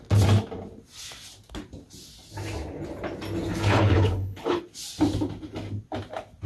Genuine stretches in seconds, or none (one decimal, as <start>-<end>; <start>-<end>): 0.0-3.5; 4.6-6.5